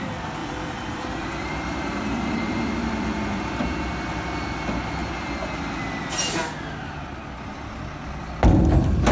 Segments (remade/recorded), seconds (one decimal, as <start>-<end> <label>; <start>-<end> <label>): 0.0-0.4 recorded; 0.4-3.4 remade; 3.4-9.1 recorded